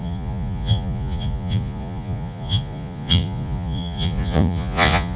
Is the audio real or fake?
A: fake